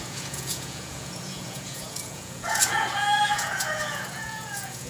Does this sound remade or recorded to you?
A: remade